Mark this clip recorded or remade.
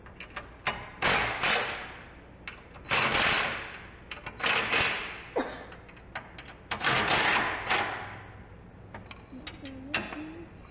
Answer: recorded